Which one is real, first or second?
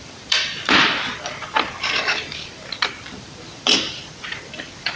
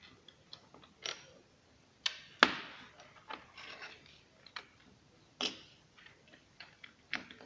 second